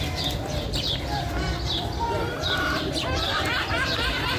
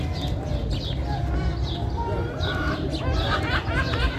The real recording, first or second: second